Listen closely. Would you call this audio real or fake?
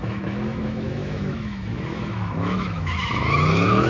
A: fake